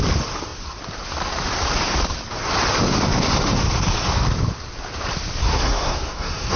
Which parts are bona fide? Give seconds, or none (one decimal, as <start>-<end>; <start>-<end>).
0.0-5.4